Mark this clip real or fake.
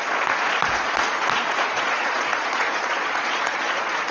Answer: fake